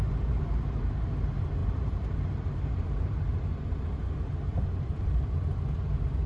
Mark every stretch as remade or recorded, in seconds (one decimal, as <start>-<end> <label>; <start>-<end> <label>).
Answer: 0.0-1.6 recorded; 1.6-3.4 remade; 3.4-4.5 recorded; 4.5-5.4 remade; 5.4-6.3 recorded